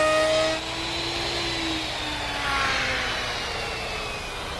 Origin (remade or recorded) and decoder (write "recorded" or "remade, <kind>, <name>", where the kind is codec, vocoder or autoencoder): recorded